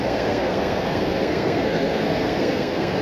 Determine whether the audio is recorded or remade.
remade